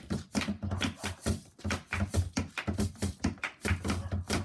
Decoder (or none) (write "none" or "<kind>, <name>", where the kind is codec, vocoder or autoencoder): none